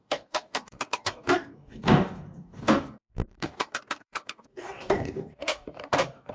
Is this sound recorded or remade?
remade